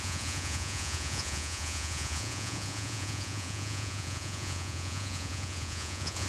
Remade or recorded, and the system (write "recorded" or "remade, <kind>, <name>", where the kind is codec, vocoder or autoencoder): remade, vocoder, Vocos